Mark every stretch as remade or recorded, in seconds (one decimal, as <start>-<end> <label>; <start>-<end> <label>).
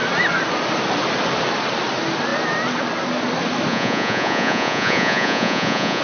0.0-3.7 recorded; 3.7-6.0 remade